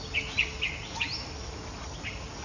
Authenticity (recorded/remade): recorded